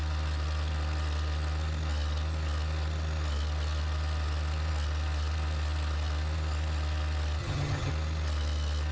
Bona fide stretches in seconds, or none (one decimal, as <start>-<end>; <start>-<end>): 0.0-7.4; 7.9-8.9